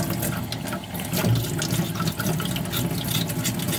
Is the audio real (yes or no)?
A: yes